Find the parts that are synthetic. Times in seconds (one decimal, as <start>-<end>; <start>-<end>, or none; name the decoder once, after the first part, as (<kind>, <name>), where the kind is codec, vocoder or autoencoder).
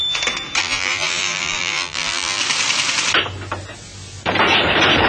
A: 0.6-2.4 (vocoder, BigVGAN v2)